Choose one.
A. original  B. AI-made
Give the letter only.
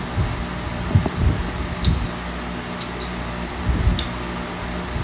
A